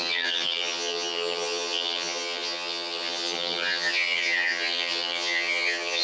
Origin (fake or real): fake